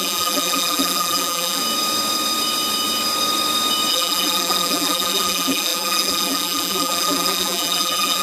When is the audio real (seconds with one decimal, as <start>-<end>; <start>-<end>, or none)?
1.6-3.9

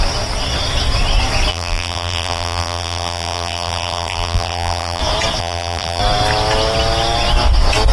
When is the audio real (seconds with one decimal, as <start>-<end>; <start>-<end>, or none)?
0.0-1.5; 5.0-5.4; 6.0-7.9

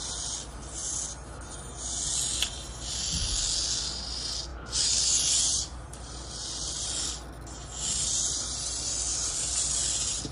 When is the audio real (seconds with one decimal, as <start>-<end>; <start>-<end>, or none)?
0.0-4.5; 5.4-9.1; 9.7-10.3

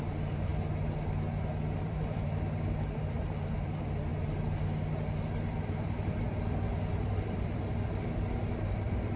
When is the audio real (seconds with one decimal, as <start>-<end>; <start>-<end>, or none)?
0.5-1.8; 4.1-5.5

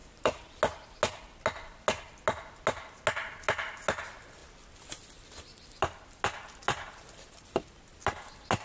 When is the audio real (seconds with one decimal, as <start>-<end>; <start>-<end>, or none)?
0.6-8.6

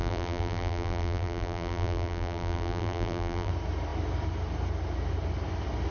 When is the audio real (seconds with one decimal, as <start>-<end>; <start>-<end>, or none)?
3.5-5.9